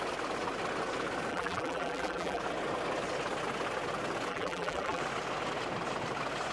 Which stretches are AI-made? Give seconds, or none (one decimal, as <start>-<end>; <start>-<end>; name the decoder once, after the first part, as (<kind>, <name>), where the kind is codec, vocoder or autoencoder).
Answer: 1.3-2.4 (vocoder, BigVGAN v2); 4.3-5.0